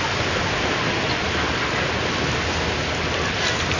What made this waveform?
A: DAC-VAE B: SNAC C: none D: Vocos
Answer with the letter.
C